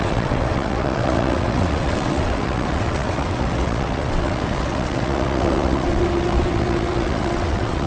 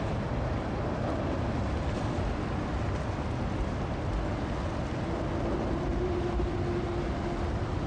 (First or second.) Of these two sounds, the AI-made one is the first